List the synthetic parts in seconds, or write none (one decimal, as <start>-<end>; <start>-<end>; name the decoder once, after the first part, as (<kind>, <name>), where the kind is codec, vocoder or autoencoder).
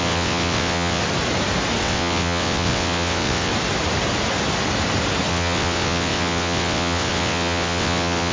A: 0.0-1.0 (vocoder, WaveNeXt); 1.8-3.5; 5.3-8.3